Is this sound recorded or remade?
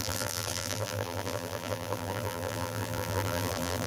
remade